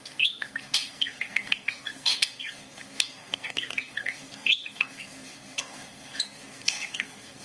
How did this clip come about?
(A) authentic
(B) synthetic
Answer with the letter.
B